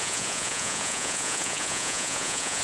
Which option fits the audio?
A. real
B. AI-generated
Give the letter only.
B